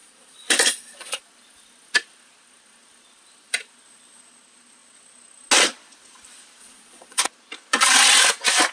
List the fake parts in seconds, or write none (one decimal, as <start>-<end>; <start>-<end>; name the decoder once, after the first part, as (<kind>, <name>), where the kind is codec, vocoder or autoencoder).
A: 0.0-1.2 (vocoder, Vocos); 6.6-7.2